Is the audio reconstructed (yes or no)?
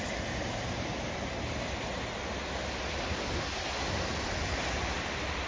no